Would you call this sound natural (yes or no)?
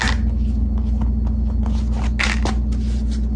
yes